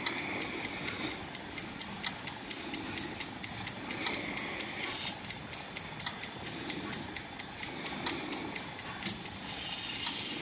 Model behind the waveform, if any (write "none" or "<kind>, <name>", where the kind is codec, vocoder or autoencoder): none